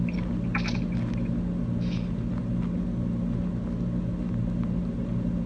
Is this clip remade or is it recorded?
recorded